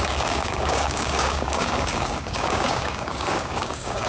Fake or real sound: fake